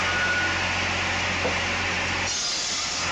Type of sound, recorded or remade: recorded